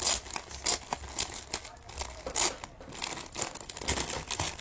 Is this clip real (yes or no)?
yes